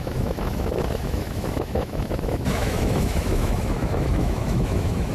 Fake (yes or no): yes